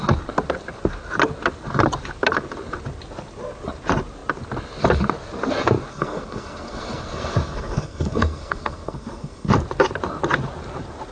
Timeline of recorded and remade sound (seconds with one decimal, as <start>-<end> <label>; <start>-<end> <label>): 0.0-5.9 recorded; 5.9-9.5 remade; 9.5-11.1 recorded